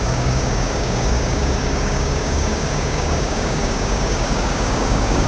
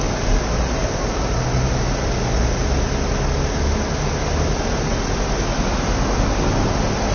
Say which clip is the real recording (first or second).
second